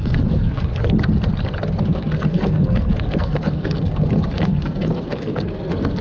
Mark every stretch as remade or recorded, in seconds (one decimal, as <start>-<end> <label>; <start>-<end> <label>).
0.0-0.7 remade; 0.7-1.8 recorded; 1.8-6.0 remade